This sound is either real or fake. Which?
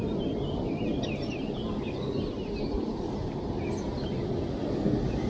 real